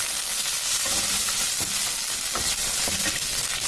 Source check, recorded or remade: recorded